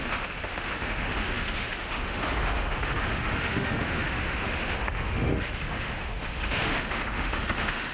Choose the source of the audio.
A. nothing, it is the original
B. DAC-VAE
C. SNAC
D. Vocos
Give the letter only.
B